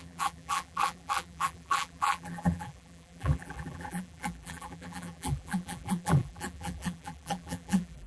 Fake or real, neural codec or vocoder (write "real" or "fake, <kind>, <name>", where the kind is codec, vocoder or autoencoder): fake, vocoder, BigVGAN v2